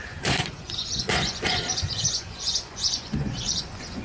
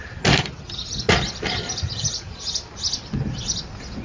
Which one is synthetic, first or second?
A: first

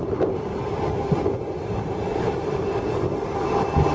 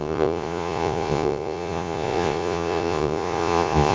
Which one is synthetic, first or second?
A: second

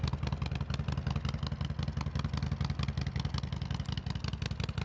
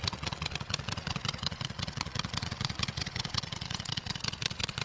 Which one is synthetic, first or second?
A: second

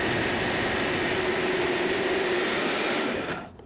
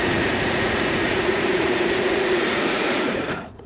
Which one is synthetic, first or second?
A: second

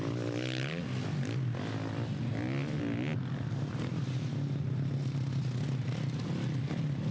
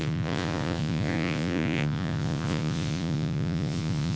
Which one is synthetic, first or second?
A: second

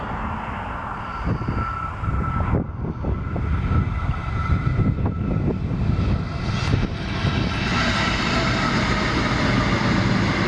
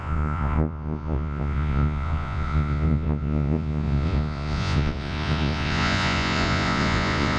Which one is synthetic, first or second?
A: second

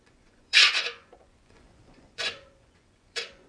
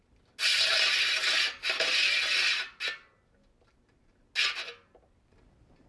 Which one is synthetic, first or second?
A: first